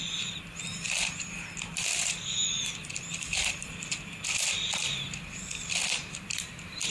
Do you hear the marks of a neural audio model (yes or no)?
no